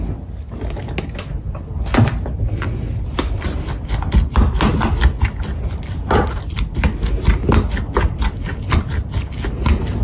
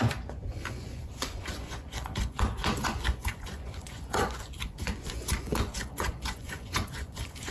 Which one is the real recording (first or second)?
first